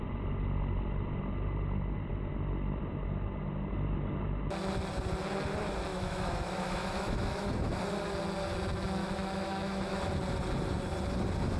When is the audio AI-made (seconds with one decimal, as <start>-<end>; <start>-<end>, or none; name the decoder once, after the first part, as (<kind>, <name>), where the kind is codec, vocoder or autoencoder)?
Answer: 5.9-7.8 (autoencoder, DAC-VAE); 9.0-10.0

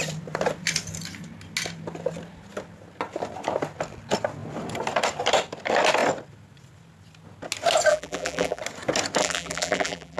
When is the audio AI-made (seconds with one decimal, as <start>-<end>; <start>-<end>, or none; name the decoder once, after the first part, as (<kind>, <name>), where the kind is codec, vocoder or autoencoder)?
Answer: 7.9-8.6 (vocoder, BigVGAN v2); 9.2-10.2

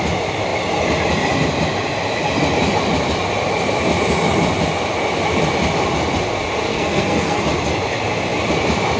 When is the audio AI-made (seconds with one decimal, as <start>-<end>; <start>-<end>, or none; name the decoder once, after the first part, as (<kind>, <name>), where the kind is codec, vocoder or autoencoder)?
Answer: 6.7-7.4 (codec, SNAC)

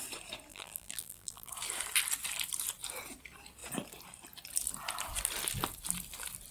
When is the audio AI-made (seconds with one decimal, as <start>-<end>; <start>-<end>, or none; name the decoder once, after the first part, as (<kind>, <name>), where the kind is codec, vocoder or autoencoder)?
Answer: 0.5-1.5 (vocoder, BigVGAN v2)

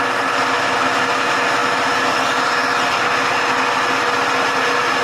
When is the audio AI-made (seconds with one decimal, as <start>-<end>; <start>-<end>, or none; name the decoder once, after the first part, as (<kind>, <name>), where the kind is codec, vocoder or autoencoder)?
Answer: none

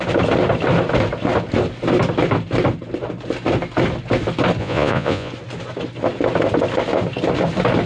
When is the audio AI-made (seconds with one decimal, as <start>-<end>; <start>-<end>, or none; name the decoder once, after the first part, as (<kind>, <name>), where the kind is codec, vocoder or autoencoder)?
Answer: 4.6-5.3 (vocoder, Vocos)